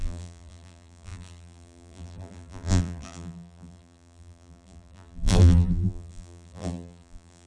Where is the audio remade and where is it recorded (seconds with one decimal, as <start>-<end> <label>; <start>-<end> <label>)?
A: 0.0-7.5 remade

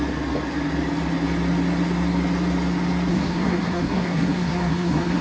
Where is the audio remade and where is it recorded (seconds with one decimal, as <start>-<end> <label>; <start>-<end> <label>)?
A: 0.0-3.1 recorded; 3.1-5.2 remade

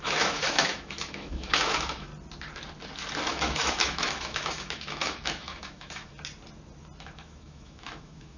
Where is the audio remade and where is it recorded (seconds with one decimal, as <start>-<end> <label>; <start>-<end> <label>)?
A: 0.0-2.1 remade; 2.1-3.3 recorded; 3.3-6.1 remade; 6.1-7.0 recorded; 7.0-8.4 remade

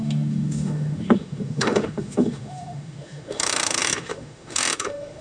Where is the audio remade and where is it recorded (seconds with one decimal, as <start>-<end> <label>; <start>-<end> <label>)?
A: 0.0-5.2 remade